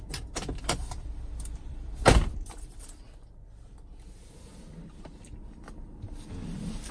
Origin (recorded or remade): remade